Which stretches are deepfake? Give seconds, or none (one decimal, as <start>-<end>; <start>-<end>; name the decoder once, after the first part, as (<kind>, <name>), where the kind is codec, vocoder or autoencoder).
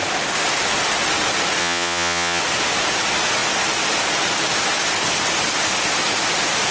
1.6-2.4 (vocoder, Vocos)